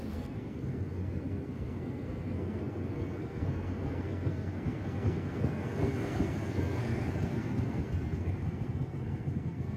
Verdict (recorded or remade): remade